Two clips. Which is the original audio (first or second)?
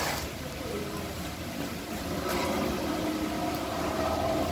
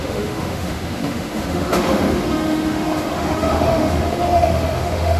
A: first